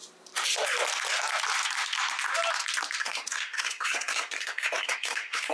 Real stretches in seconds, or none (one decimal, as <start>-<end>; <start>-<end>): 0.0-3.0